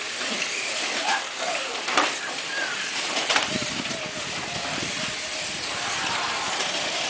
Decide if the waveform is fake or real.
fake